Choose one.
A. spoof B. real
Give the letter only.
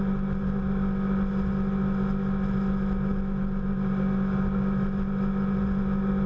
B